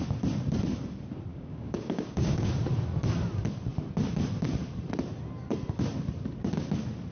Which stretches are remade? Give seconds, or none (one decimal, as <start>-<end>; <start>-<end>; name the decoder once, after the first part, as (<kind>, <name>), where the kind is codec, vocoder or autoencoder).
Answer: 1.3-2.5 (codec, DAC)